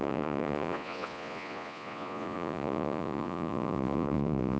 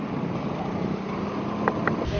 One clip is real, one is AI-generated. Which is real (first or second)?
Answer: second